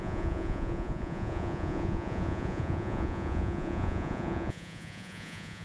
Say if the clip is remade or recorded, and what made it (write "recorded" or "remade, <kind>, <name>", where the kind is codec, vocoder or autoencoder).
remade, vocoder, Vocos